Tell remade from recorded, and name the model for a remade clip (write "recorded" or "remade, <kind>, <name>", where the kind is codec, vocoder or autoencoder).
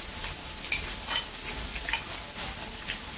recorded